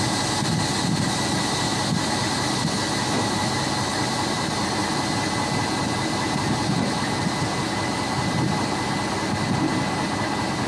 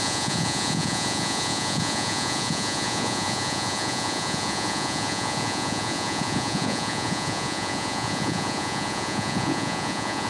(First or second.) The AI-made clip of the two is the second